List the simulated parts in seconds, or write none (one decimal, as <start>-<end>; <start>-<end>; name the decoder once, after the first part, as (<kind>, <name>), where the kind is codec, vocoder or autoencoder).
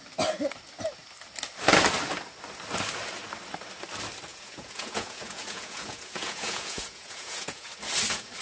4.3-7.7 (vocoder, Vocos)